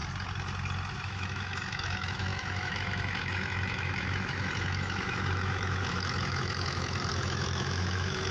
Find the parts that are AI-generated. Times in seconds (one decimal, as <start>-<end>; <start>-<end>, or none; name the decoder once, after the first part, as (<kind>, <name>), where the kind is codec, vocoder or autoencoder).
1.0-8.3 (autoencoder, DAC-VAE)